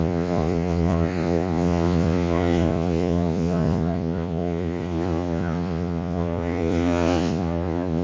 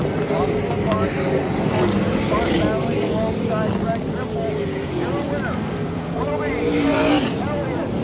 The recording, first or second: second